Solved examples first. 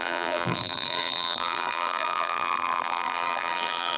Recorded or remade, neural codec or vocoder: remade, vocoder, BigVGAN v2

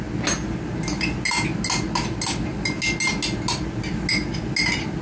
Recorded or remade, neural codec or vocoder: recorded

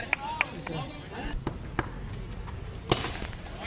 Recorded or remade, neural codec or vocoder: recorded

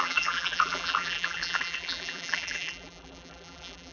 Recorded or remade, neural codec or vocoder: remade, vocoder, BigVGAN v2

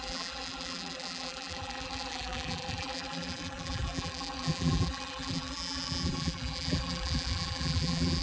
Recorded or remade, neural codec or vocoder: remade, vocoder, BigVGAN v2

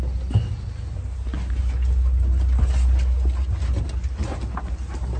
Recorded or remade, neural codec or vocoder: recorded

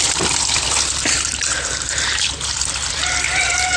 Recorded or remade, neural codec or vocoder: remade, vocoder, BigVGAN v2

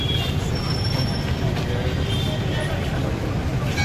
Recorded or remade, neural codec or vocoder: recorded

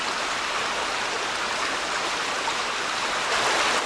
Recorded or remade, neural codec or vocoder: recorded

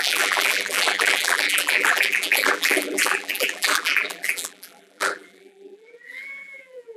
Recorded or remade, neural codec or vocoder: remade, vocoder, BigVGAN v2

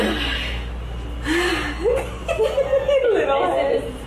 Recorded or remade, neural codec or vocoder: recorded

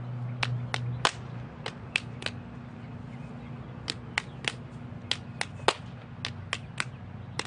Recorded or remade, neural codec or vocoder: recorded